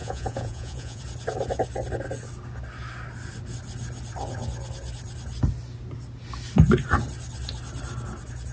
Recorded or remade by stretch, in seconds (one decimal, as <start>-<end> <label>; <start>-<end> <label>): 0.0-1.0 remade; 1.0-8.5 recorded